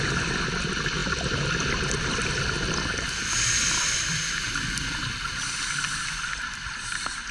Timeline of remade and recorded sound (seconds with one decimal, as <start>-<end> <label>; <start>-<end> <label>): 0.0-7.3 recorded